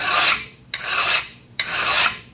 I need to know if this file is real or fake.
fake